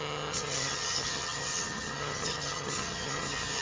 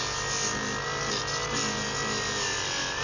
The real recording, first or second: second